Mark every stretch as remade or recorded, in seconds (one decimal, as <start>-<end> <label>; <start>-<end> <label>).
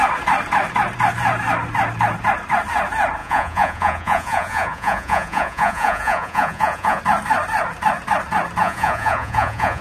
0.0-3.2 recorded; 3.2-7.0 remade; 7.0-8.6 recorded; 8.6-9.8 remade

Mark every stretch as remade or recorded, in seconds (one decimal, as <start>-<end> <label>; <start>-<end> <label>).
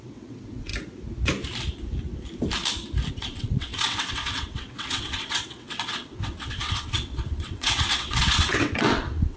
0.0-0.7 remade; 0.7-3.1 recorded; 3.1-9.4 remade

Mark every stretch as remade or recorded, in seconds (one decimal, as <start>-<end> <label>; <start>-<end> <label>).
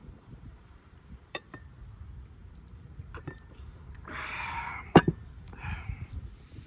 0.0-1.6 remade; 1.6-2.4 recorded; 2.4-6.2 remade; 6.2-6.7 recorded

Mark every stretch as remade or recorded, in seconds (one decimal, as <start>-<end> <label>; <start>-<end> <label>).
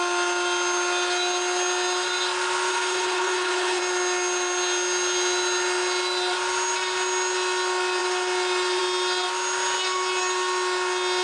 0.0-2.7 recorded; 2.7-3.8 remade; 3.8-11.2 recorded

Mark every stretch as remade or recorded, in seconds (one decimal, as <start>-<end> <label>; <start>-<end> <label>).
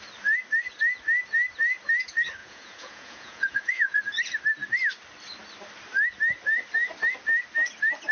0.0-2.4 recorded; 2.4-4.0 remade; 4.0-8.1 recorded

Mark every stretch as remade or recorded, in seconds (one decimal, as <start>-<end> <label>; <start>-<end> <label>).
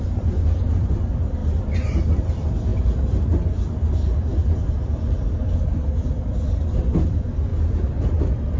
0.0-8.6 remade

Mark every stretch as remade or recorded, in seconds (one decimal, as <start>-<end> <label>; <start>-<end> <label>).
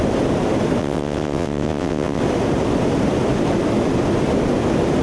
0.0-0.8 recorded; 0.8-2.2 remade; 2.2-5.0 recorded